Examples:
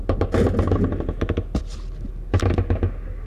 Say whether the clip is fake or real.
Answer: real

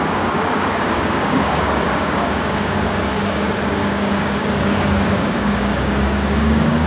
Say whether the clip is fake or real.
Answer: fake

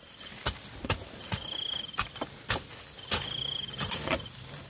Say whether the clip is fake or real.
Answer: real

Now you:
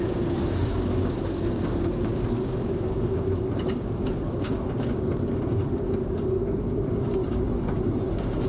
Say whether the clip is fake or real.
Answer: fake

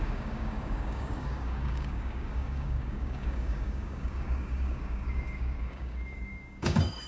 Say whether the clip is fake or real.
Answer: fake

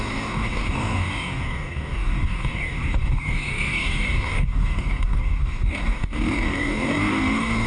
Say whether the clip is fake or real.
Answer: fake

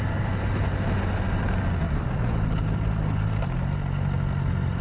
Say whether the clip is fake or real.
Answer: real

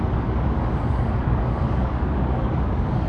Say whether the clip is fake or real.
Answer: fake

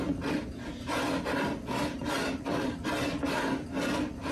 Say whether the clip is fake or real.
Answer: real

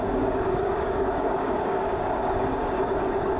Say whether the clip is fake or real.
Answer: fake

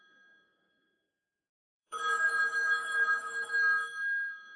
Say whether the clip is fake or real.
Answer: fake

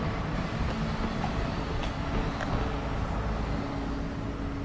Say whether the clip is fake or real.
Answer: real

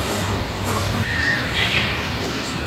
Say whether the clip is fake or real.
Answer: fake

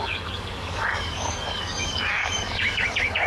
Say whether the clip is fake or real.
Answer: fake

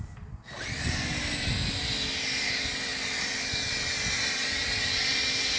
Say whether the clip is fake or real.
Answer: real